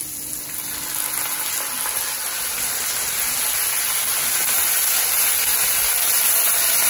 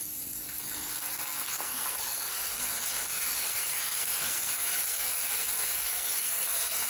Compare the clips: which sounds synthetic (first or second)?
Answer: second